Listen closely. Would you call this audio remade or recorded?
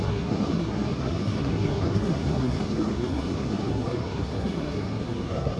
remade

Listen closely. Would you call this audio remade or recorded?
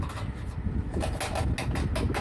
recorded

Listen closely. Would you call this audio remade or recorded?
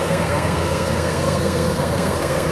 remade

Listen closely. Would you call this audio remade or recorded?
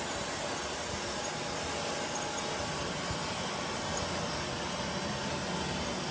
recorded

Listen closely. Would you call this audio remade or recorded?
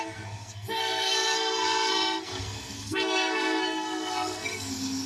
remade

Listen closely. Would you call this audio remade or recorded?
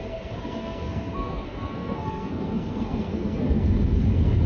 remade